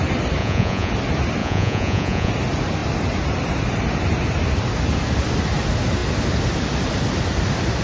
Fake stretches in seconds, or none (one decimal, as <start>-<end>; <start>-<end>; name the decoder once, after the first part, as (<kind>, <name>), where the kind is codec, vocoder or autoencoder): 0.4-0.9 (vocoder, Vocos); 1.4-2.3